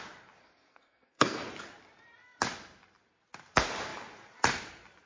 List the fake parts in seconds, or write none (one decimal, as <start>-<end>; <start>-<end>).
0.4-1.5